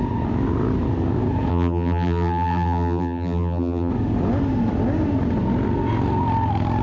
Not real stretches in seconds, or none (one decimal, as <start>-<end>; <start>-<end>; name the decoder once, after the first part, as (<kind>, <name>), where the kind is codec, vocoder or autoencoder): 1.5-3.9 (vocoder, BigVGAN v2)